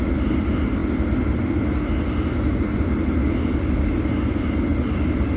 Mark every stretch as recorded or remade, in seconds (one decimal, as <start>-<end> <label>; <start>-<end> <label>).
0.0-5.4 recorded